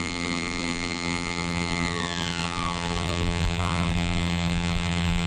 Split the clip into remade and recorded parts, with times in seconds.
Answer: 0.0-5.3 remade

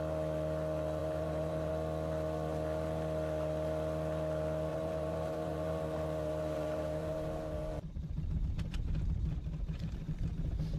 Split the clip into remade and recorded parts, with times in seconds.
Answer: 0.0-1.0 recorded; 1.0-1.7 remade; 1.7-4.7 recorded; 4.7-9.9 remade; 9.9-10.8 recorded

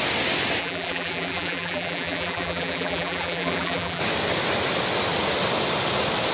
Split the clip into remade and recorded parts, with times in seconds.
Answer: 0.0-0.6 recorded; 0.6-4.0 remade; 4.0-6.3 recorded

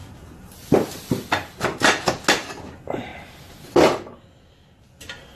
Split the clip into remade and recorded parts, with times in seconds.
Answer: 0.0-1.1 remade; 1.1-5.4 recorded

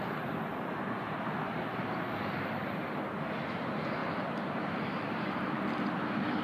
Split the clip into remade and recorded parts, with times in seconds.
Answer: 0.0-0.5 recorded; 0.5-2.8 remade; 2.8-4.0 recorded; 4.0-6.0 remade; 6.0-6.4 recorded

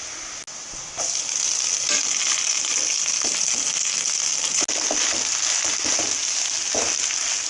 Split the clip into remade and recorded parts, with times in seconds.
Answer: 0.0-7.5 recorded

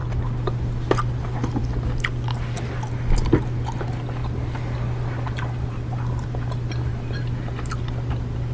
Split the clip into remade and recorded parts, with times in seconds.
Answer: 0.0-1.6 remade; 1.6-4.2 recorded; 4.2-6.9 remade; 6.9-8.5 recorded

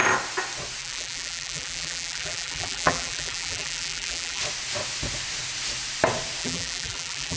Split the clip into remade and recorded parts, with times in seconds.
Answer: 0.0-0.8 recorded; 0.8-4.4 remade; 4.4-6.4 recorded; 6.4-7.4 remade